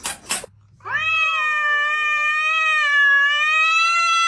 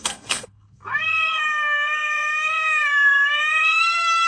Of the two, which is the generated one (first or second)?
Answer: second